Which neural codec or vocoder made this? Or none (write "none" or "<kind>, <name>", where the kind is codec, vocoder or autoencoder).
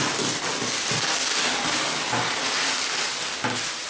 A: none